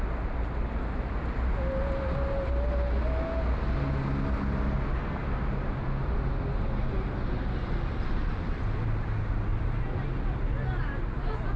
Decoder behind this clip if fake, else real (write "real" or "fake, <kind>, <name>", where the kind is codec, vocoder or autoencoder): real